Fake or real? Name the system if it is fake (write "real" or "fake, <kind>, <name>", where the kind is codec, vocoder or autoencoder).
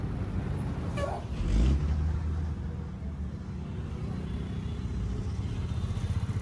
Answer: real